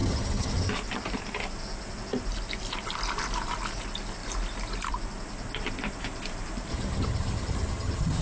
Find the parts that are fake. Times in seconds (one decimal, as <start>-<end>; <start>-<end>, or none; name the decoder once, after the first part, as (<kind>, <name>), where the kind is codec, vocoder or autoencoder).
0.0-0.7 (vocoder, HiFi-GAN); 6.7-8.2